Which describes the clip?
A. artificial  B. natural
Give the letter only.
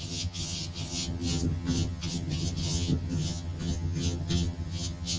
A